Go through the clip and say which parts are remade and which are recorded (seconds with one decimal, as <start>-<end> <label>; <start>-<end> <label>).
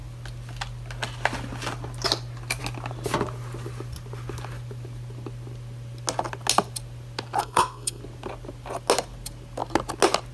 0.0-7.4 recorded; 7.4-8.0 remade; 8.0-10.3 recorded